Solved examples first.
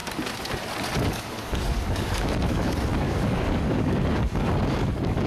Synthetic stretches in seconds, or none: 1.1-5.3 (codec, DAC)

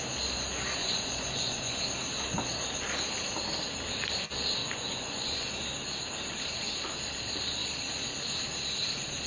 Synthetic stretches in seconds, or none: 0.8-1.8 (vocoder, Vocos); 4.6-5.5

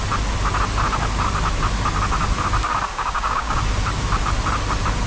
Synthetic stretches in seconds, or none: 2.9-3.6 (codec, DAC)

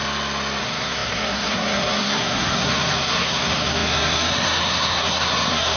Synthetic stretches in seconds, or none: 0.6-5.8 (codec, SNAC)

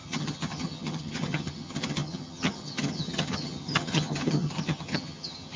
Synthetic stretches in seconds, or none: 0.0-5.6 (vocoder, HiFi-GAN)

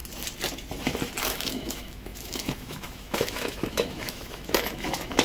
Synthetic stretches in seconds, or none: 1.2-5.2 (autoencoder, DAC-VAE)

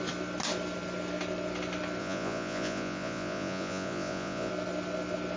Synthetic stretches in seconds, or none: 2.0-4.5 (vocoder, Vocos)

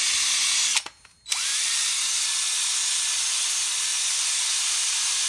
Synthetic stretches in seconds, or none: 1.5-2.2 (vocoder, BigVGAN v2); 3.9-4.8